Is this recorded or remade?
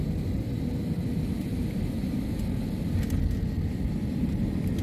recorded